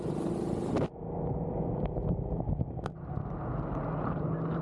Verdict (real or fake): real